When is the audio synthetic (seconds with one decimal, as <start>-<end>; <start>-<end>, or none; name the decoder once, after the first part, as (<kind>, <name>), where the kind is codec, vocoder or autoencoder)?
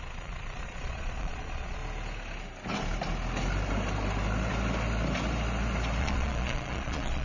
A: 0.0-1.8 (vocoder, Vocos); 6.0-7.2